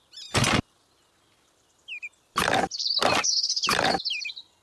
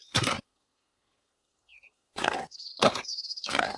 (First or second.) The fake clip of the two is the second